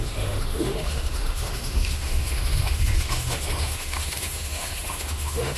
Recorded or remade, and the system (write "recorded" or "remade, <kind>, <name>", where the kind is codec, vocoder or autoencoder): remade, autoencoder, DAC-VAE